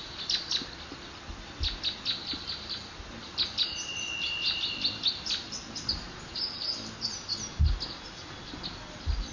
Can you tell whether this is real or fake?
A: real